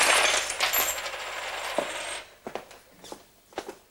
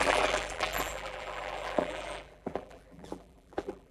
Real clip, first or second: first